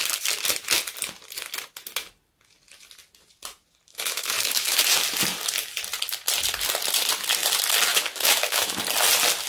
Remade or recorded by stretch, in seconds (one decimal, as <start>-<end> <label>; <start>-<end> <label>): 0.0-3.9 recorded; 3.9-4.9 remade; 4.9-7.9 recorded; 7.9-8.8 remade; 8.8-9.5 recorded

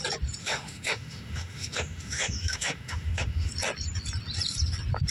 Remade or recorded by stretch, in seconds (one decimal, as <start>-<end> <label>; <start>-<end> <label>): 0.0-0.4 recorded; 0.4-3.5 remade; 3.5-5.1 recorded

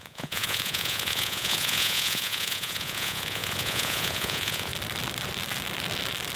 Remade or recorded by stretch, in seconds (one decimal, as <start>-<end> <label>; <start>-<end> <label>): 0.0-4.7 remade; 4.7-6.4 recorded

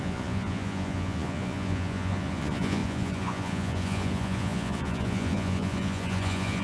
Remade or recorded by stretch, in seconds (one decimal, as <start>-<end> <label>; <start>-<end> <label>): 0.0-6.6 remade

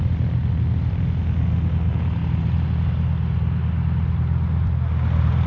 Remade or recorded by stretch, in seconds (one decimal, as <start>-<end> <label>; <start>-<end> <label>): 0.0-5.5 recorded

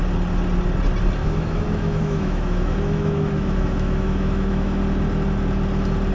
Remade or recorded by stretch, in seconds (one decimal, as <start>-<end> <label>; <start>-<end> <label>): 0.0-1.2 recorded; 1.2-4.8 remade; 4.8-6.1 recorded

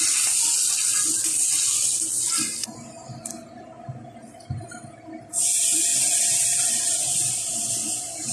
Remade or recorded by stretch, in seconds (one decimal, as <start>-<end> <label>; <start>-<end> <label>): 0.0-8.3 recorded